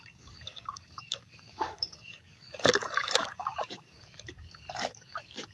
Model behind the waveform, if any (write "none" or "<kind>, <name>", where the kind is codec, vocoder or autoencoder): codec, DAC